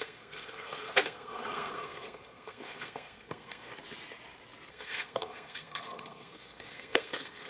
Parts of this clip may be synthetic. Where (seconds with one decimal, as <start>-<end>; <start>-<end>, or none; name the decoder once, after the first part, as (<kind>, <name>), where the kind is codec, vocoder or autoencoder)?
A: 0.0-3.7 (codec, SNAC); 4.7-7.5